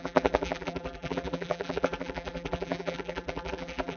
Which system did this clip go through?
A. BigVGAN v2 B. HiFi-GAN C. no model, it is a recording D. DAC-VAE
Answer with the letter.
A